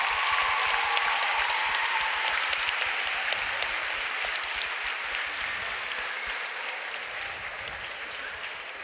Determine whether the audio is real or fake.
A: real